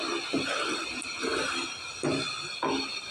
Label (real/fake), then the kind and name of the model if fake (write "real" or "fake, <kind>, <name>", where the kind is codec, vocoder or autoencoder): real